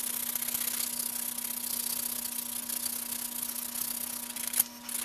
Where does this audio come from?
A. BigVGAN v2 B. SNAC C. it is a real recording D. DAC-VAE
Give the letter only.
C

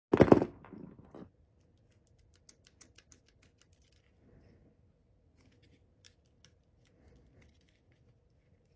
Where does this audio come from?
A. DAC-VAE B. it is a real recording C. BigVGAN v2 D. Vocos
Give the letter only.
B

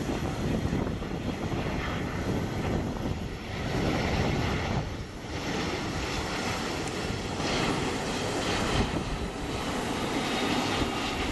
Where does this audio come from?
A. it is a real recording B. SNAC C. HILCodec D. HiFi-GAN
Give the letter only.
A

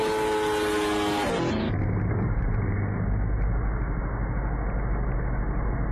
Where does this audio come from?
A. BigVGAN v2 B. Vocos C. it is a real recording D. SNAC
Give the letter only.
C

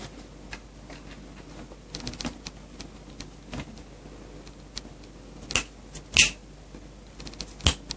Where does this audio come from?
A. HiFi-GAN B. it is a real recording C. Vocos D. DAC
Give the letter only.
B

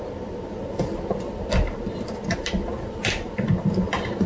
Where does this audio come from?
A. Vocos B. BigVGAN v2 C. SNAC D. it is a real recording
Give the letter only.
D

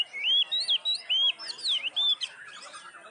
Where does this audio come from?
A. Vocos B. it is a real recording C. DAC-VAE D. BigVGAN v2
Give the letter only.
B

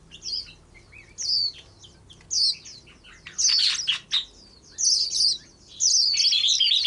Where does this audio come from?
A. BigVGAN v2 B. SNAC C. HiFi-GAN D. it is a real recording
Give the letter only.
D